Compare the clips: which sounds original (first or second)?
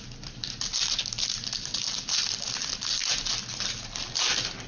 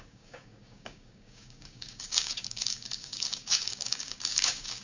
first